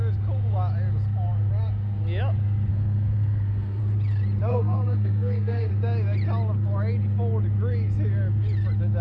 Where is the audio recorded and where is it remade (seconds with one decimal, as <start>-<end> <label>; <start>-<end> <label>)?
0.0-2.7 recorded; 2.7-3.8 remade; 3.8-4.5 recorded; 4.5-5.7 remade; 5.7-9.0 recorded